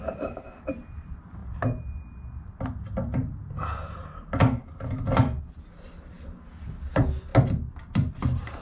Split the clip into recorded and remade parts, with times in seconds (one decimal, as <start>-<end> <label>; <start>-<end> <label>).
0.0-8.6 recorded